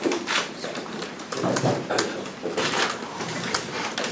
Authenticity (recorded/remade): remade